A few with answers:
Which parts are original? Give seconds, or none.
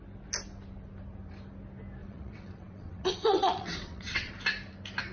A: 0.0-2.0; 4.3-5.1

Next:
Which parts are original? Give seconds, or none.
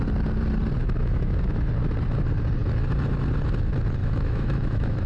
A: 0.0-0.8; 1.7-4.0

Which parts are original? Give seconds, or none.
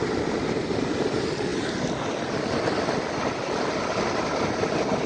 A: 0.0-5.1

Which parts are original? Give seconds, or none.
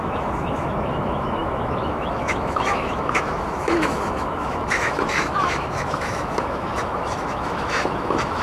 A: none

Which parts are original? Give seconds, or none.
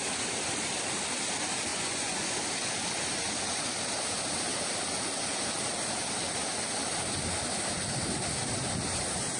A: 0.0-1.7; 2.3-9.4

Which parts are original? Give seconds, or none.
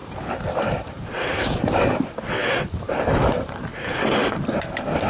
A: 1.9-5.1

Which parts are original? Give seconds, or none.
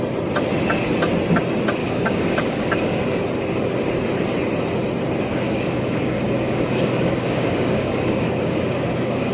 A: 0.0-1.8; 3.2-5.3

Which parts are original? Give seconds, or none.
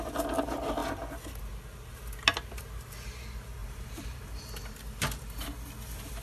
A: 0.0-3.6; 4.4-6.2